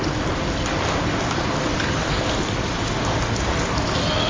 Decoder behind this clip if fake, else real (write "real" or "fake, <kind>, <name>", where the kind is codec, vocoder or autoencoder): real